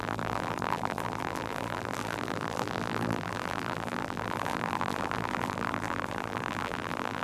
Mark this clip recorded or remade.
remade